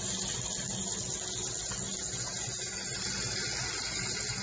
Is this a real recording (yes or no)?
yes